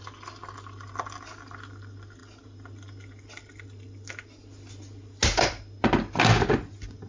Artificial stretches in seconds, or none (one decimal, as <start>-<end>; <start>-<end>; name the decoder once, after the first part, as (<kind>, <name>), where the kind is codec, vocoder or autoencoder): none